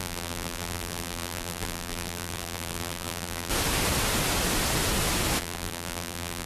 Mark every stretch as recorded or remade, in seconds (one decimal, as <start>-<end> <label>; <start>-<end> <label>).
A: 0.0-3.5 remade; 3.5-5.4 recorded; 5.4-6.5 remade